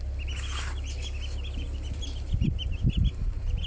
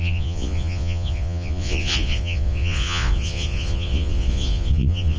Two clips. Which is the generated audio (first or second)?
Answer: second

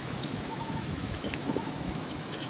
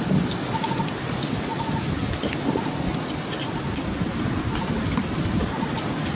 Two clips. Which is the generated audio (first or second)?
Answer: first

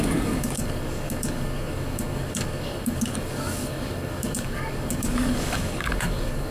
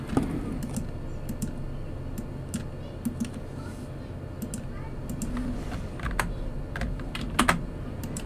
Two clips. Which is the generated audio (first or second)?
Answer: first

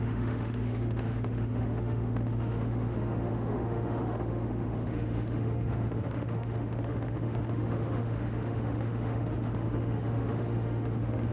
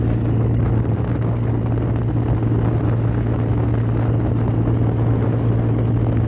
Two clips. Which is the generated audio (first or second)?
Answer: first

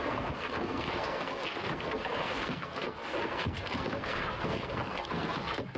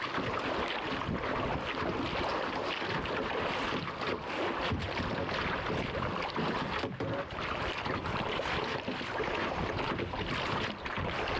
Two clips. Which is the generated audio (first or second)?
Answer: first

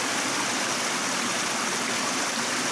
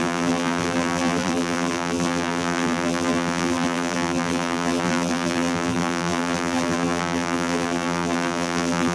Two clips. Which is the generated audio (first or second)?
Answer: second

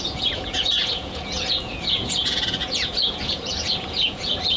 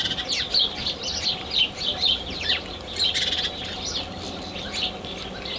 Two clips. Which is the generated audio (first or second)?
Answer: first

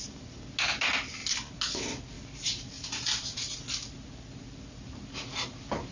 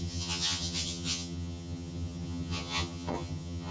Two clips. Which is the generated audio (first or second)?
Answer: second